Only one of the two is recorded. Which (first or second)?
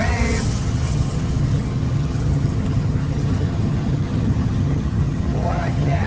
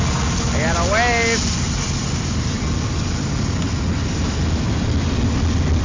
second